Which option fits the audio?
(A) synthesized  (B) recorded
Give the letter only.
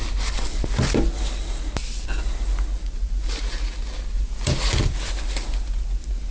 B